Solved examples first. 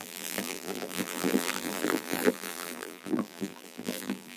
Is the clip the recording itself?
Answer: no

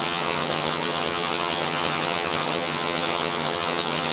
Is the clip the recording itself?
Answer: no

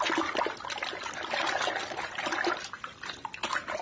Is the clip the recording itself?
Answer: yes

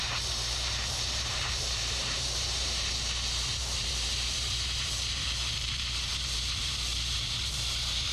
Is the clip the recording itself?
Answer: no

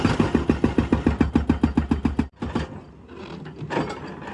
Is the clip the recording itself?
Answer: yes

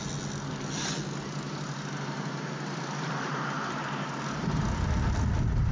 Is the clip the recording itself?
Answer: yes